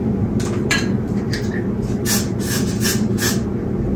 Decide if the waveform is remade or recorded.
recorded